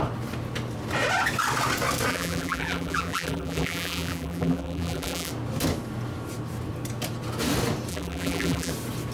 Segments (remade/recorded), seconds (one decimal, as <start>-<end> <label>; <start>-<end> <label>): 0.0-2.1 recorded; 2.1-5.3 remade; 5.3-7.9 recorded; 7.9-8.7 remade; 8.7-9.1 recorded